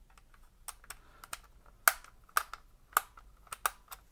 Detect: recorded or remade recorded